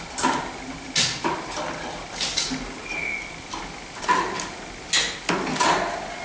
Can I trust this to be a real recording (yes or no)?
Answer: yes